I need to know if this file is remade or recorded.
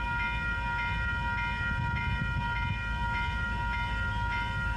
recorded